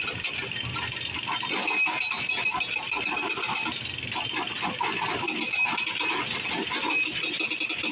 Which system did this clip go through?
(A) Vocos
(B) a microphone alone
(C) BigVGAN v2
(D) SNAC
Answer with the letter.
B